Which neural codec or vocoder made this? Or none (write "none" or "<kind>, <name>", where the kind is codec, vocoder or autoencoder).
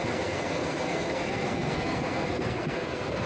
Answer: codec, SNAC